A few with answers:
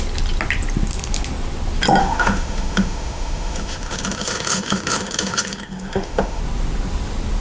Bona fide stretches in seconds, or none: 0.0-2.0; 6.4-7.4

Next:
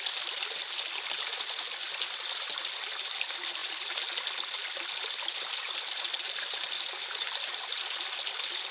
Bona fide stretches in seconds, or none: 0.0-8.7